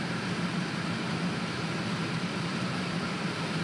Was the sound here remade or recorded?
remade